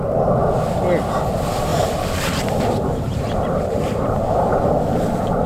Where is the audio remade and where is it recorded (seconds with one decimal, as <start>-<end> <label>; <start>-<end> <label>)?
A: 0.0-1.7 recorded; 1.7-4.8 remade; 4.8-5.5 recorded